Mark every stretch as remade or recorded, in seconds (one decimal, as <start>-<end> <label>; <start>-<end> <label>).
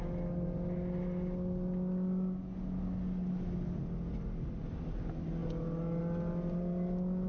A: 0.0-7.3 recorded